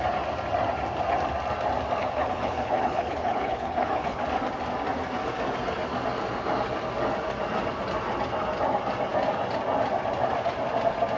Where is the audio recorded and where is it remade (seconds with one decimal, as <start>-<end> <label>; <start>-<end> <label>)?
0.0-2.0 recorded; 2.0-4.2 remade; 4.2-11.2 recorded